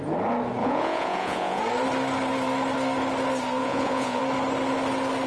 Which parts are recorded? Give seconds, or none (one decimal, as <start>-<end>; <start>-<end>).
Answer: 0.0-0.6; 1.6-3.6; 4.2-5.3